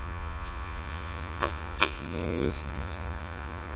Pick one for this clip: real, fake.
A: fake